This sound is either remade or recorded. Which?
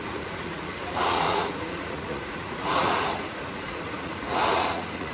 remade